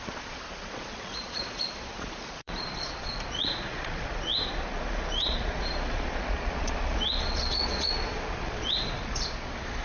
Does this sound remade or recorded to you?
remade